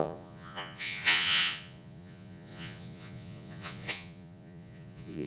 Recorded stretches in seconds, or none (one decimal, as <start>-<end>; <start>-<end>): none